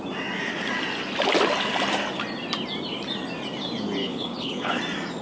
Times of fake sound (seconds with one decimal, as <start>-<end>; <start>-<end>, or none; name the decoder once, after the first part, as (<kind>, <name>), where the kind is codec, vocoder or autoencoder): 4.0-4.8 (codec, HILCodec)